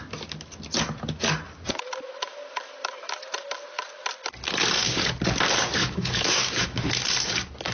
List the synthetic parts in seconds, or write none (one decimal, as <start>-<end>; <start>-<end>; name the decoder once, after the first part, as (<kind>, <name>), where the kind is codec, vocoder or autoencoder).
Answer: 5.8-6.9 (autoencoder, DAC-VAE)